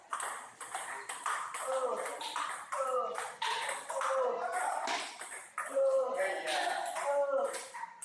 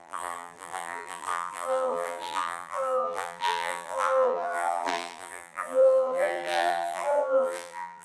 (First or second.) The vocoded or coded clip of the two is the second